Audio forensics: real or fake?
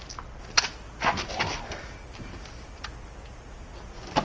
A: real